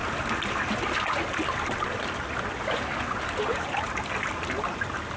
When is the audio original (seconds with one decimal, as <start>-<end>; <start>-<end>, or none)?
0.0-3.5; 4.3-5.2